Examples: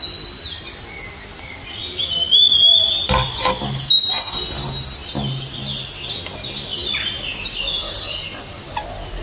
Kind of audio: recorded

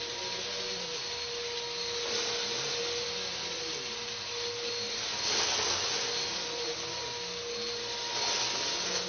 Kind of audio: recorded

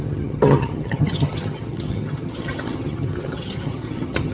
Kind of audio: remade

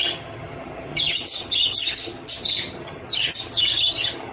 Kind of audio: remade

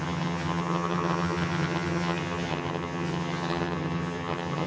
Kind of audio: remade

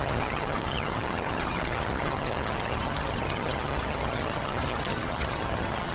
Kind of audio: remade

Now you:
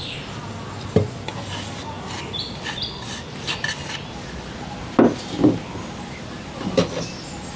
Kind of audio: recorded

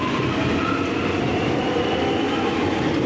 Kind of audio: recorded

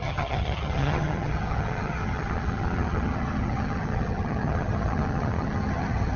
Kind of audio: remade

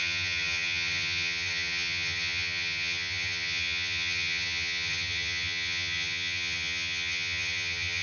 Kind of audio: remade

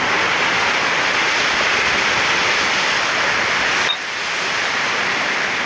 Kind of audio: recorded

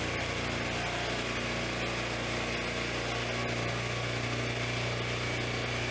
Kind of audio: recorded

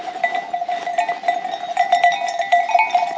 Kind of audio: recorded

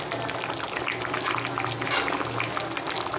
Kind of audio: recorded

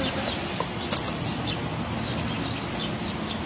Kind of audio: recorded